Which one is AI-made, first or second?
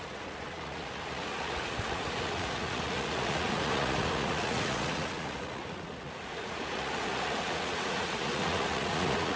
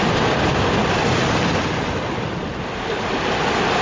first